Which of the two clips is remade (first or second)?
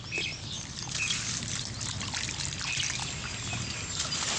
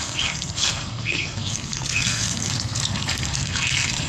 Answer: second